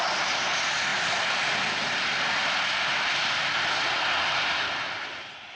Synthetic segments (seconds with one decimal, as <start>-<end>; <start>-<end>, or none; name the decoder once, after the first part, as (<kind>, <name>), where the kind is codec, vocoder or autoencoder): none